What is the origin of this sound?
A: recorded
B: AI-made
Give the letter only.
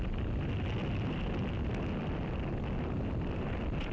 A